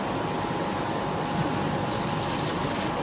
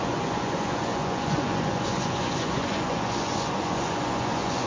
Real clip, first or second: first